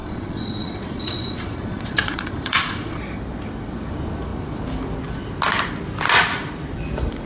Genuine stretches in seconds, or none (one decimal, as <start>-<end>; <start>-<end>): 3.0-7.3